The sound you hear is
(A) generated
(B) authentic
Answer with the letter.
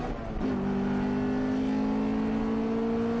B